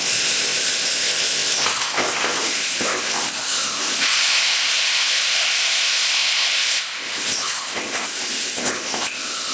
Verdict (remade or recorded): remade